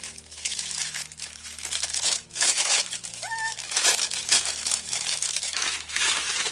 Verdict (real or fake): fake